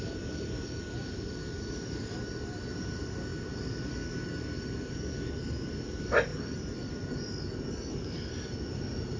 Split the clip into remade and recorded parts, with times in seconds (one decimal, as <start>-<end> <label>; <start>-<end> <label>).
0.0-6.3 recorded; 6.3-7.2 remade; 7.2-9.2 recorded